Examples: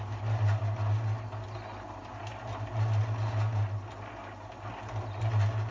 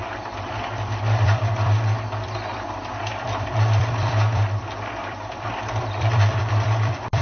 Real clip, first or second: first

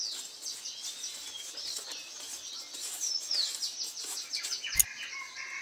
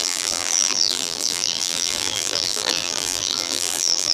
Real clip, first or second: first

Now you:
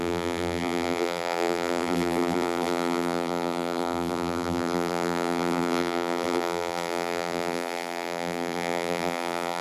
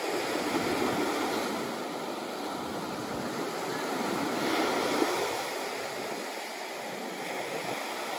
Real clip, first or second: second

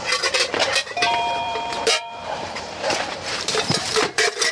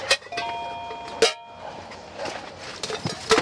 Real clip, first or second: second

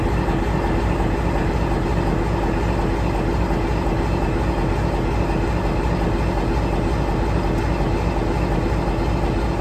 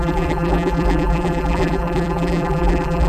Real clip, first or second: first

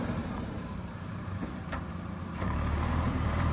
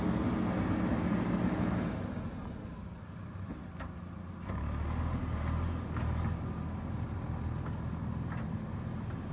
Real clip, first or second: second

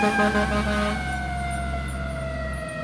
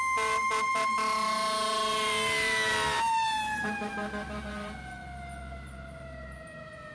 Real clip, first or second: first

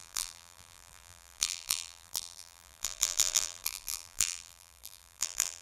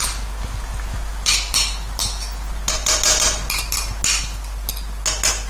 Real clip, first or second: second